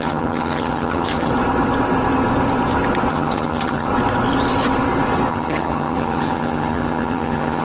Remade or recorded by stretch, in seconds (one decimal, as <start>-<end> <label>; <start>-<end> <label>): 0.0-1.3 remade; 1.3-3.1 recorded; 3.1-3.9 remade; 3.9-5.3 recorded; 5.3-7.6 remade